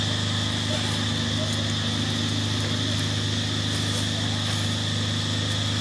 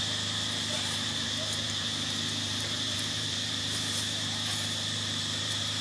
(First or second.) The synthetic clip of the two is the second